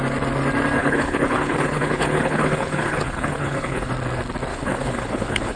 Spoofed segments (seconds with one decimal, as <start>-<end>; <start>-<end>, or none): 0.8-3.9; 4.5-5.6